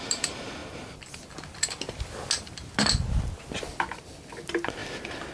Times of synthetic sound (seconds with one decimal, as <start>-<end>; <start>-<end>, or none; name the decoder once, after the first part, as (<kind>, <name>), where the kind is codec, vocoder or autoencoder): none